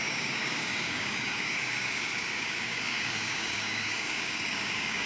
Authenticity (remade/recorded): remade